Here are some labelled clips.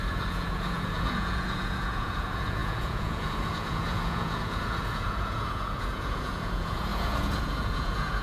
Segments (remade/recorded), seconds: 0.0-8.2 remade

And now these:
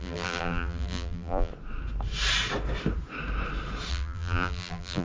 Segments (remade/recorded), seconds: 0.0-1.5 remade; 1.5-3.9 recorded; 3.9-5.0 remade

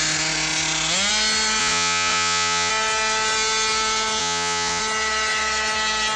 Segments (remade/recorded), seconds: 0.0-1.6 recorded; 1.6-2.7 remade; 2.7-4.2 recorded; 4.2-4.8 remade; 4.8-6.2 recorded

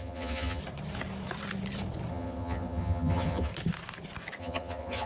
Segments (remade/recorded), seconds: 0.0-0.6 remade; 0.6-2.1 recorded; 2.1-3.5 remade; 3.5-4.4 recorded; 4.4-5.1 remade